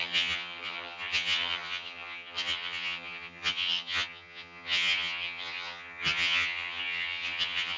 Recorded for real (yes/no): no